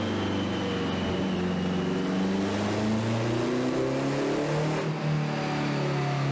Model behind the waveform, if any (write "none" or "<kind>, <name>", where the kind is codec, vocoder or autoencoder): none